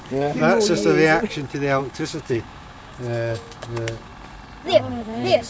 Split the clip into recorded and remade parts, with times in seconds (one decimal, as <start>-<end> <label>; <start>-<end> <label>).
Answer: 0.0-0.4 remade; 0.4-1.8 recorded; 1.8-4.1 remade; 4.1-4.9 recorded; 4.9-5.5 remade

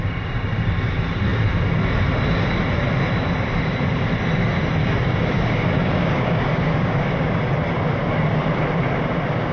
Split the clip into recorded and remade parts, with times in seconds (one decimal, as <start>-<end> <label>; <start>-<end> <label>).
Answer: 0.0-4.8 recorded; 4.8-7.4 remade; 7.4-9.5 recorded